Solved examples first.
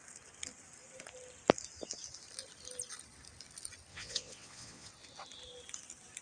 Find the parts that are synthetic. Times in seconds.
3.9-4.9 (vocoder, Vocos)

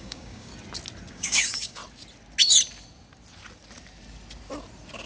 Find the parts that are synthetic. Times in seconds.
0.0-0.5 (codec, DAC); 1.1-1.8

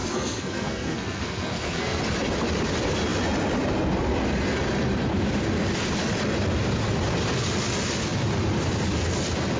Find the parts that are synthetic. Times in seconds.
0.0-2.0 (codec, SNAC)

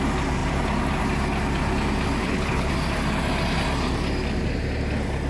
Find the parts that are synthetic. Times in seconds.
2.2-2.7 (codec, HILCodec)

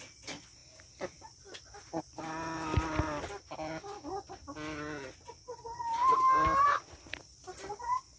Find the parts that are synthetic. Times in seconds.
none

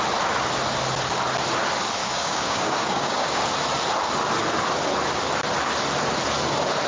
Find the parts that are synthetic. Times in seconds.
2.0-3.4 (codec, DAC)

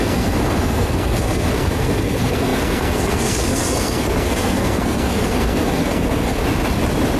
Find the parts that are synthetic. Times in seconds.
0.0-6.4 (codec, SNAC)

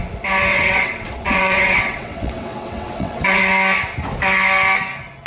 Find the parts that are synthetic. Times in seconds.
0.5-3.5 (vocoder, WaveNeXt)